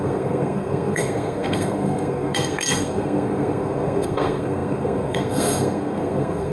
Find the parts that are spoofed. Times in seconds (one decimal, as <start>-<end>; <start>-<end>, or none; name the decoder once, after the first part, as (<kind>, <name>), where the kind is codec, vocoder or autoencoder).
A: 0.0-6.5 (codec, SNAC)